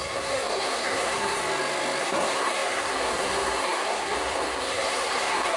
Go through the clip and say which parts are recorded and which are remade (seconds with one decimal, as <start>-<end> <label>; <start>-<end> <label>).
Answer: 0.0-1.4 remade; 1.4-2.0 recorded; 2.0-5.6 remade